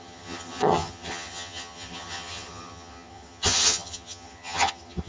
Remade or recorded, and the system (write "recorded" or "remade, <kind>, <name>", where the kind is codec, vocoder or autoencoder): remade, vocoder, HiFi-GAN